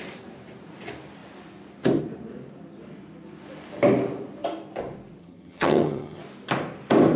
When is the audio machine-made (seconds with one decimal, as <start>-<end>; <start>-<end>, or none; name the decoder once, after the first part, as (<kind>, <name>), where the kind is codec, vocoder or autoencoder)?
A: 5.2-6.2 (vocoder, HiFi-GAN)